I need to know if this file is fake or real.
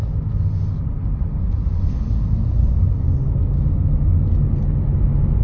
real